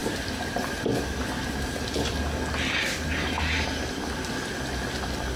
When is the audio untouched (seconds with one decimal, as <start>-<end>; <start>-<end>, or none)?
2.2-5.4